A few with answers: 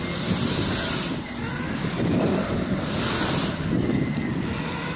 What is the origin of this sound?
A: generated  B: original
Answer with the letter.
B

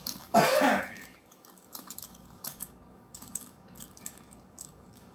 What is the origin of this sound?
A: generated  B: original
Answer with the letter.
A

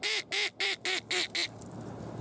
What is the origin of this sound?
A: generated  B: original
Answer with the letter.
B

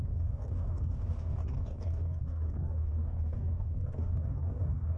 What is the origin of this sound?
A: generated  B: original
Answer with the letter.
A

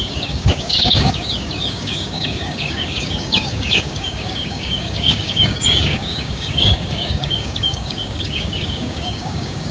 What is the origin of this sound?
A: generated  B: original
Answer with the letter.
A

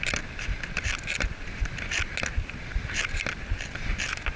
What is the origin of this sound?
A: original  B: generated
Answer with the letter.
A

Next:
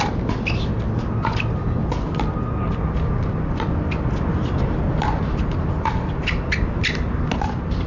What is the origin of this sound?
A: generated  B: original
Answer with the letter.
B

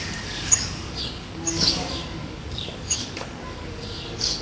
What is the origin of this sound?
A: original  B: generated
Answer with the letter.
B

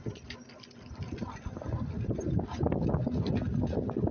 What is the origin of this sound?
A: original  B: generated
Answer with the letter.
A